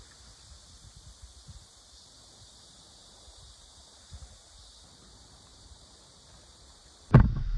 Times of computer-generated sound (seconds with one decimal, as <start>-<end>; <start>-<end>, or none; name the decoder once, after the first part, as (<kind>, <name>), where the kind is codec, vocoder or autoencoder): none